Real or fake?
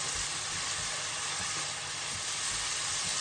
real